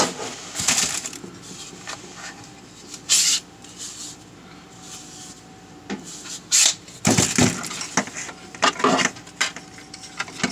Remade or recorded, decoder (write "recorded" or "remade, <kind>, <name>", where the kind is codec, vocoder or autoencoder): recorded